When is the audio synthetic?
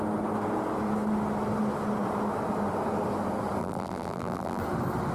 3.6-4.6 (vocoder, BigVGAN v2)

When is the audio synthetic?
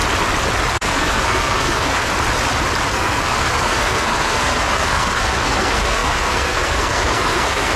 0.7-2.1 (codec, SNAC); 2.9-7.8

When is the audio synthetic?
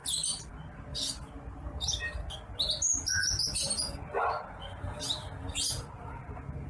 none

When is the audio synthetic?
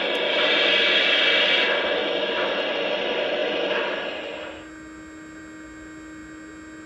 none